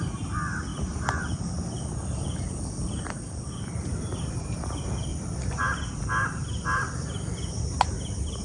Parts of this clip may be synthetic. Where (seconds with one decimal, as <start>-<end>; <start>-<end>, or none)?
0.7-4.3; 5.1-5.6